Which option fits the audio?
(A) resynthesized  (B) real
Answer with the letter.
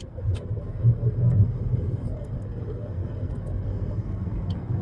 A